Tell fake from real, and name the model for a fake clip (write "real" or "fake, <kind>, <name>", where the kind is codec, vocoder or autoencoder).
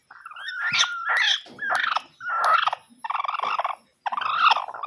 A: real